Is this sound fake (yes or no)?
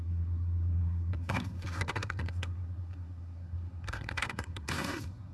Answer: yes